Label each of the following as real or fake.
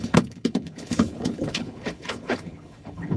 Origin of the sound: fake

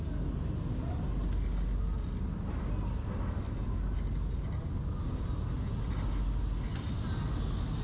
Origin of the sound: real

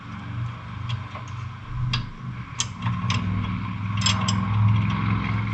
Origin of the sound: real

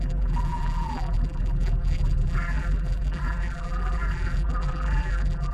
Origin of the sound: fake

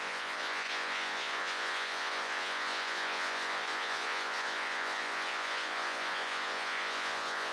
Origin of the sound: fake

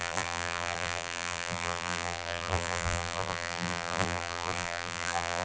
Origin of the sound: fake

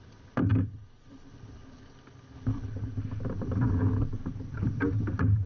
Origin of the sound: real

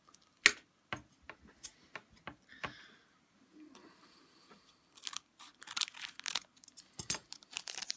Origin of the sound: real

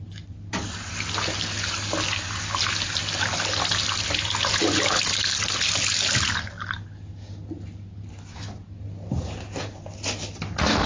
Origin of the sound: real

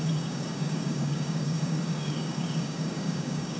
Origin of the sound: fake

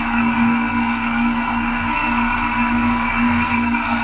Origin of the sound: fake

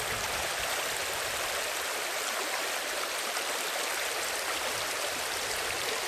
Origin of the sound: real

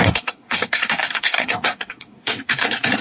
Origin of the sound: fake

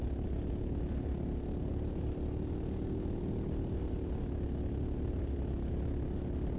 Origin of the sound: real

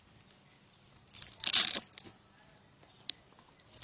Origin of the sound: real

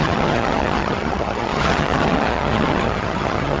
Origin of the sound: fake